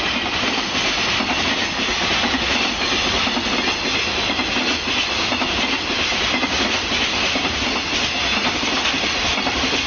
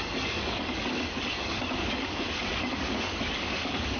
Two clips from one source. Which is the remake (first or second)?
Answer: second